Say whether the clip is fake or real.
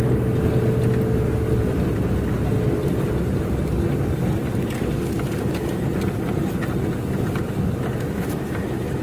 real